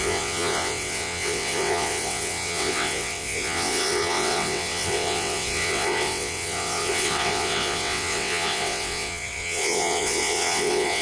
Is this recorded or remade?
remade